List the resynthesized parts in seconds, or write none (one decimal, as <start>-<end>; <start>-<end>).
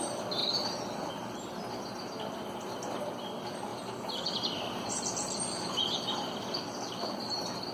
0.4-1.1; 3.7-7.3